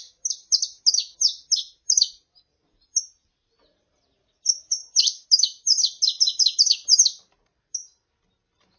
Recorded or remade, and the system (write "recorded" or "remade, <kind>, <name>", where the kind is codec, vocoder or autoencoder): recorded